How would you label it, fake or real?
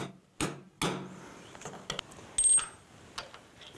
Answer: real